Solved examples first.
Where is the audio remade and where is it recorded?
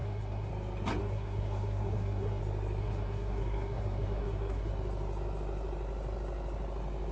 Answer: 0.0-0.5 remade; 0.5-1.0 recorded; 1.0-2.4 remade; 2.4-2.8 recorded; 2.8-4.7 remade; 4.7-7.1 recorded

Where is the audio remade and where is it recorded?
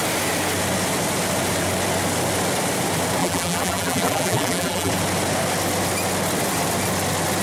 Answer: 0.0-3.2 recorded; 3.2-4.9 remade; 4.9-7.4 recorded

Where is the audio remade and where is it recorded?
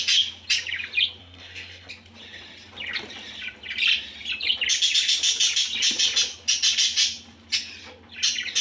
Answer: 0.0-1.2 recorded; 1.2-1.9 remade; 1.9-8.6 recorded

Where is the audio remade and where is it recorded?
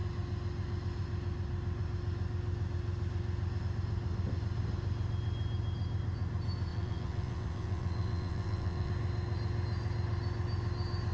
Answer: 0.0-6.7 recorded; 6.7-8.9 remade; 8.9-11.1 recorded